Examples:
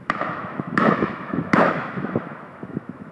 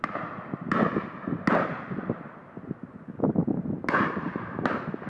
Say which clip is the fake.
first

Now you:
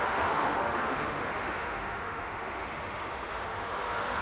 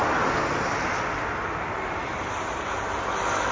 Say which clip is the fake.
first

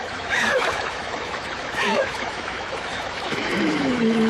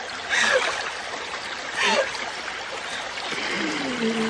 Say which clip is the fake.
first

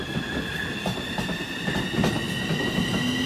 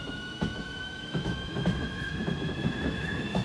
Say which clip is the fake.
second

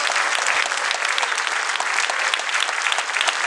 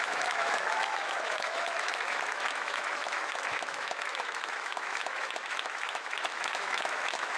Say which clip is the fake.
second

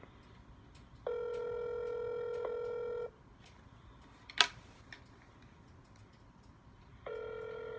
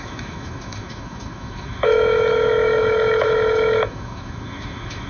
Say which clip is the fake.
second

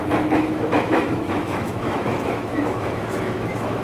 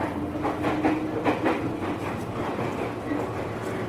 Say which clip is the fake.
first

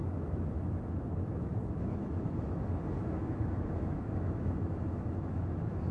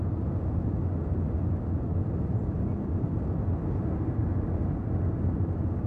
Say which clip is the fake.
first